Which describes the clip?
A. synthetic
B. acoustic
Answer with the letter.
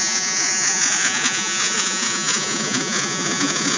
A